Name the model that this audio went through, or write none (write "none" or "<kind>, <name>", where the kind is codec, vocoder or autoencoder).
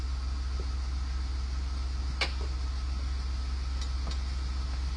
none